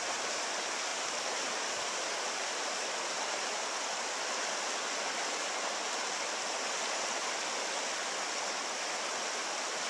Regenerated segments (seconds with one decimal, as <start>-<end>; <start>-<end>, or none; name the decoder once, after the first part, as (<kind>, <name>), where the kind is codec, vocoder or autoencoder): 0.9-4.8 (vocoder, BigVGAN v2)